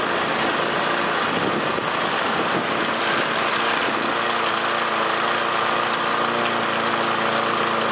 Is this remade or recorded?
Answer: recorded